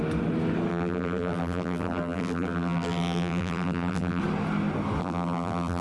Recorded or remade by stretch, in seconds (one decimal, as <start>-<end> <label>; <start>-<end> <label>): 0.0-0.7 recorded; 0.7-4.2 remade; 4.2-5.0 recorded; 5.0-5.8 remade